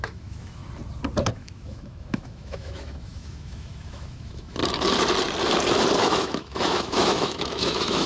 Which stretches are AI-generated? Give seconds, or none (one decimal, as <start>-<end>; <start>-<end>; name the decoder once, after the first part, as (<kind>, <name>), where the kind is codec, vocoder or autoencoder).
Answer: 0.0-0.6 (autoencoder, DAC-VAE); 1.2-4.6; 6.0-8.1